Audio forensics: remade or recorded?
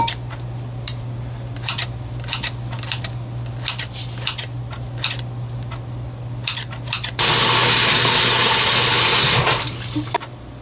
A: recorded